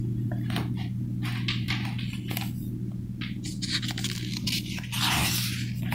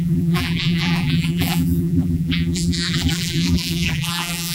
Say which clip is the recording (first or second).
first